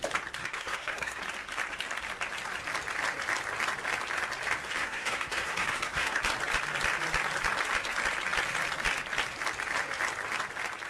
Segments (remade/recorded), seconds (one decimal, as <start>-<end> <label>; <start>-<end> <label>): 0.0-0.4 recorded; 0.4-1.2 remade; 1.2-4.8 recorded; 4.8-6.2 remade; 6.2-10.9 recorded